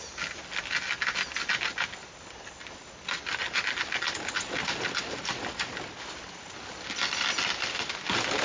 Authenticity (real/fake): real